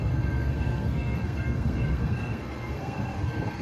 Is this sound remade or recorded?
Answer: remade